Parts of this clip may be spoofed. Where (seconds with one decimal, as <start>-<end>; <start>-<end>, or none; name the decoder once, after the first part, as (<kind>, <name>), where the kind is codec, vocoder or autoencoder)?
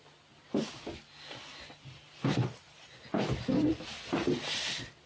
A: none